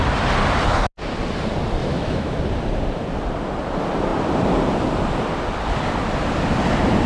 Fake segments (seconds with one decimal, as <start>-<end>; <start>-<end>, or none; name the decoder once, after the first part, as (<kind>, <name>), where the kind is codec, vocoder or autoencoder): 1.8-2.4 (autoencoder, DAC-VAE)